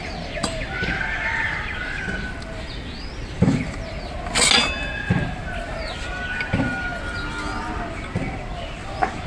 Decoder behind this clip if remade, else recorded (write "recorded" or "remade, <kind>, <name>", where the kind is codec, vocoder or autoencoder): recorded